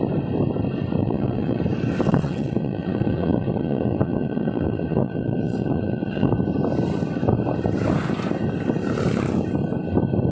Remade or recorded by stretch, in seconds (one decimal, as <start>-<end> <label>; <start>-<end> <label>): 0.0-1.0 recorded; 1.0-1.6 remade; 1.6-2.1 recorded; 2.1-6.3 remade; 6.3-10.3 recorded